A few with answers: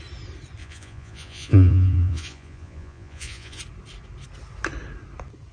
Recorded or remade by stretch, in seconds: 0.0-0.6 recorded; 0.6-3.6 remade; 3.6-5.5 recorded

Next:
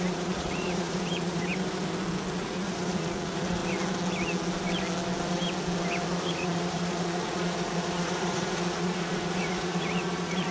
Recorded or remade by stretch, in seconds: 0.0-1.5 remade; 1.5-2.3 recorded; 2.3-3.6 remade; 3.6-6.1 recorded; 6.1-10.5 remade

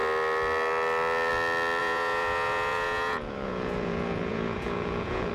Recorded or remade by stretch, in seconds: 0.0-1.8 recorded; 1.8-5.3 remade

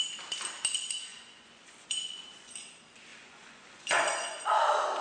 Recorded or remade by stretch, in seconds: 0.0-1.1 recorded; 1.1-2.5 remade; 2.5-3.1 recorded; 3.1-4.6 remade; 4.6-5.0 recorded

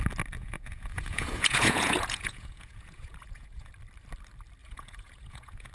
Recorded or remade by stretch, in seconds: 0.0-0.4 recorded; 0.4-3.7 remade; 3.7-4.6 recorded; 4.6-5.7 remade

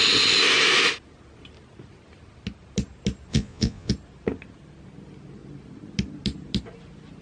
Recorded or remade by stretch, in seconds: 0.0-3.3 recorded; 3.3-3.9 remade; 3.9-7.2 recorded